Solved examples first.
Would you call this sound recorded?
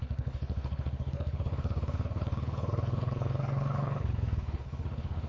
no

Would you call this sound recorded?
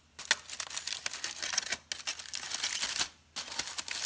yes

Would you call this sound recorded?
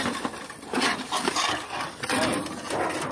yes